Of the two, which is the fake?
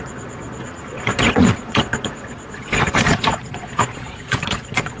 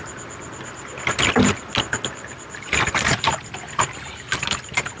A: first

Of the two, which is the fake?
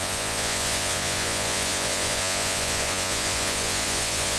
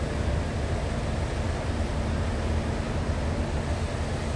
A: first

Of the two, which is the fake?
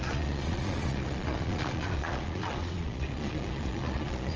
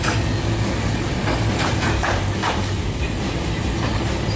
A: first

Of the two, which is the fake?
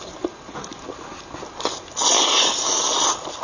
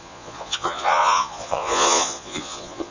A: second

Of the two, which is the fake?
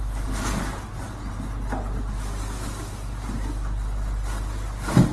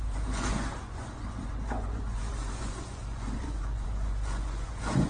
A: second